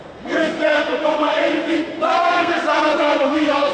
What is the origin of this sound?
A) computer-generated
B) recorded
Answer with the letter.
A